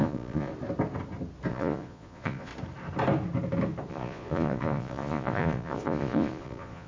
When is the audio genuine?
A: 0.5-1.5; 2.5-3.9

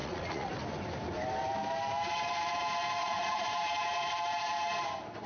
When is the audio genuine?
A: 0.5-3.0; 3.5-5.3

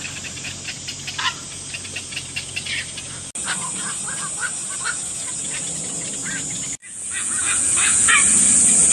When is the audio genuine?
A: 0.0-6.8; 8.1-8.9

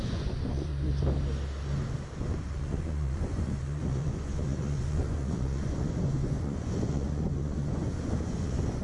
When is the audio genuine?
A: 0.7-2.3

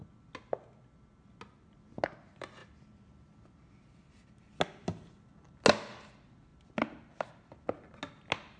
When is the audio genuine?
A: 0.0-8.6

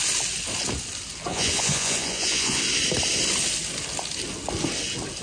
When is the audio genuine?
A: 0.0-1.3; 2.6-5.2

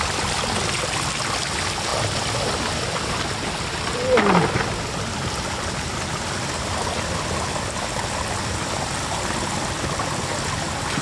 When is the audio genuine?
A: 0.0-11.0